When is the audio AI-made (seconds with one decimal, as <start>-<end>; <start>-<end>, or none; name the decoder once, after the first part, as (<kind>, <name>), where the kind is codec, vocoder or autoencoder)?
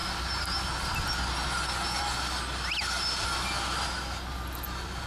none